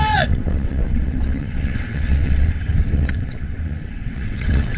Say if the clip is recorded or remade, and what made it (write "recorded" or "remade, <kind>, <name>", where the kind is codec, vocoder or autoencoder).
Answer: remade, vocoder, WaveNeXt